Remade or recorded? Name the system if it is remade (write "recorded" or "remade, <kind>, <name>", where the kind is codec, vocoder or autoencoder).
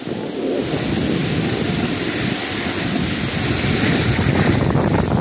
recorded